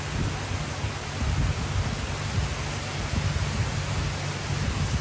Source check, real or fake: real